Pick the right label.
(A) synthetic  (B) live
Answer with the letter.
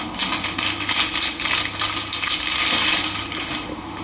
B